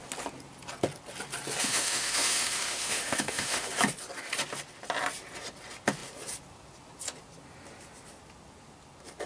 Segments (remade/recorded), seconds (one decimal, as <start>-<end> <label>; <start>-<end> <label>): 0.0-1.6 recorded; 1.6-3.7 remade; 3.7-9.3 recorded